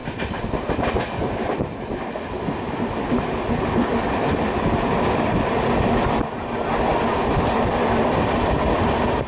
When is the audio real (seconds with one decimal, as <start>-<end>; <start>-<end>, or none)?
0.9-9.3